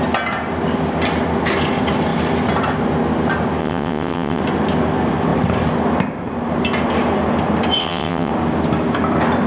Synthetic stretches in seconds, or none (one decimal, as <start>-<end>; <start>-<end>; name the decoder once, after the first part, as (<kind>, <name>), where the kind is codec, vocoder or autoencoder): 3.6-4.4 (vocoder, WaveNeXt); 7.8-8.3